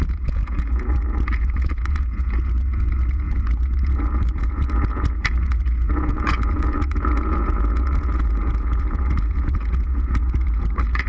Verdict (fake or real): fake